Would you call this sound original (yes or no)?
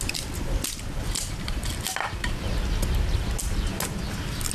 yes